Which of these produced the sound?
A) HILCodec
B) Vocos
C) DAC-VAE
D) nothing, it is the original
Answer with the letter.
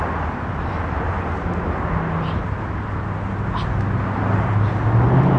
D